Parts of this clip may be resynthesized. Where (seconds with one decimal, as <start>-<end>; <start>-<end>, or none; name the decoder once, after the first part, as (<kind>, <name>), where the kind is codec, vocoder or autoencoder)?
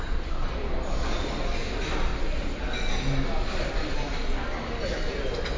none